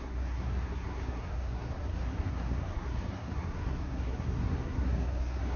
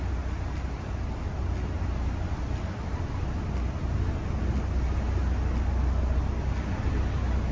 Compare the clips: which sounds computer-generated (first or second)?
first